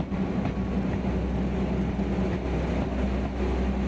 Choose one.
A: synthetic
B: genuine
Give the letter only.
B